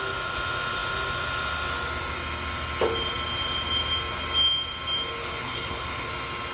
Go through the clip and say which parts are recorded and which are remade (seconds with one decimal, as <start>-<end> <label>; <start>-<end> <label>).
0.0-5.2 recorded; 5.2-6.1 remade; 6.1-6.5 recorded